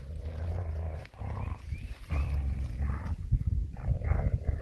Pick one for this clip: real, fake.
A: real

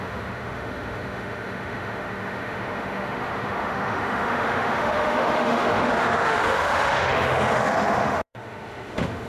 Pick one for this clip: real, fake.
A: fake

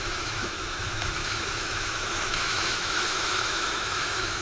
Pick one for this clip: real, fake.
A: fake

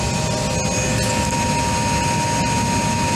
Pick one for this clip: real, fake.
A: real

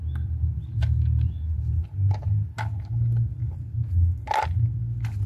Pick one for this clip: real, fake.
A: real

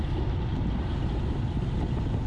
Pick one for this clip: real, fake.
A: real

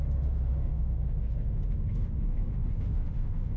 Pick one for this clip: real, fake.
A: fake